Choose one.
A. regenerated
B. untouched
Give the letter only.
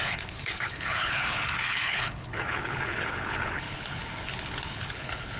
A